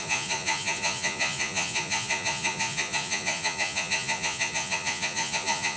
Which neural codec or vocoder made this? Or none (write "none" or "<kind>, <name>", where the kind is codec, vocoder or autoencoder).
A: vocoder, Vocos